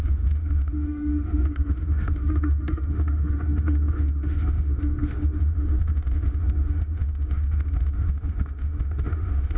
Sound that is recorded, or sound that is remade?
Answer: remade